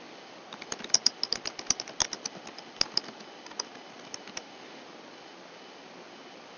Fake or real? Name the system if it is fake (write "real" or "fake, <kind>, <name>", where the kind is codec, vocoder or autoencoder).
real